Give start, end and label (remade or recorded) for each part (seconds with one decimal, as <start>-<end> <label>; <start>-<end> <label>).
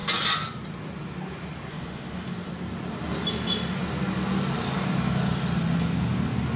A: 0.0-1.7 recorded; 1.7-2.5 remade; 2.5-6.6 recorded